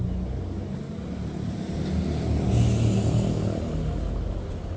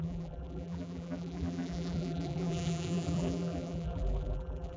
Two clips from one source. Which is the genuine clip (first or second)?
first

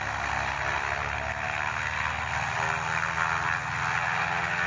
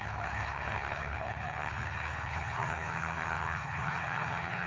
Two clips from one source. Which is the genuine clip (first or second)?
first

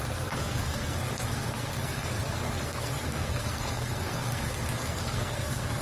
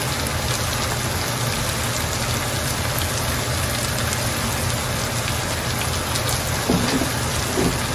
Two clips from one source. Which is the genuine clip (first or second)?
second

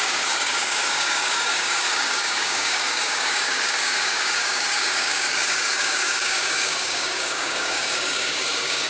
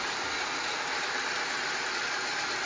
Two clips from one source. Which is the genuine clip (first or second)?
second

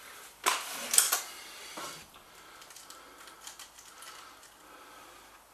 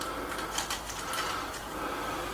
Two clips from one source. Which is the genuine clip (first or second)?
second